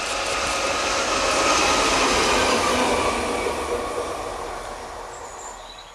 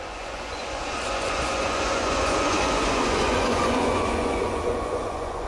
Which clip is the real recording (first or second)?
first